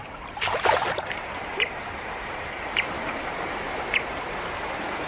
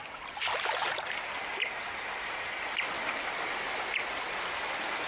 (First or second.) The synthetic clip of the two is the first